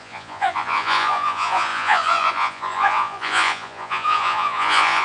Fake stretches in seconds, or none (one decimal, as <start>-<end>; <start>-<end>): 0.0-5.0